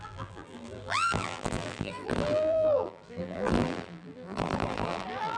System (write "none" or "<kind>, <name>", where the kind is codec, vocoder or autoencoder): vocoder, BigVGAN v2